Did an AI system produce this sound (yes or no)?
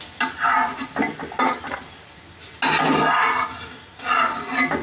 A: no